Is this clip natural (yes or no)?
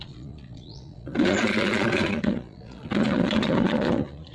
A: no